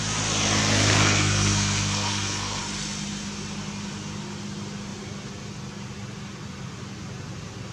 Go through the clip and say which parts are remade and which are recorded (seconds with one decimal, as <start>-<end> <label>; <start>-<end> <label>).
0.0-0.6 recorded; 0.6-2.6 remade; 2.6-7.7 recorded